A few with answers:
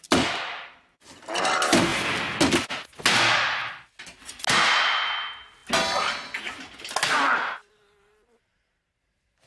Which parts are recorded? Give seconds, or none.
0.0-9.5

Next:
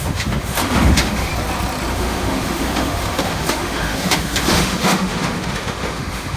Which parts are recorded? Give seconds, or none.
1.3-1.9

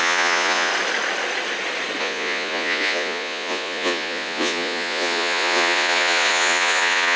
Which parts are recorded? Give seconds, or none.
0.7-2.0

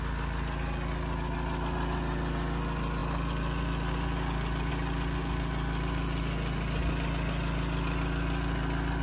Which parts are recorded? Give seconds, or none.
0.0-9.0

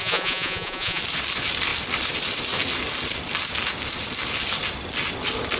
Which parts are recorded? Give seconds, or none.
1.0-5.6